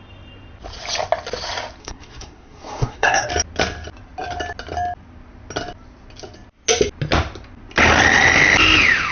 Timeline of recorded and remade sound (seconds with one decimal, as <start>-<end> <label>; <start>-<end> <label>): 0.0-1.8 recorded; 1.8-3.3 remade; 3.3-9.1 recorded